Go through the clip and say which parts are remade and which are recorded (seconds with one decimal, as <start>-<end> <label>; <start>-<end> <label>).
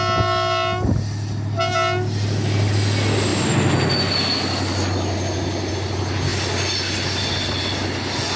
0.0-8.4 recorded